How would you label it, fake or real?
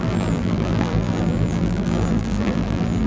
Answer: fake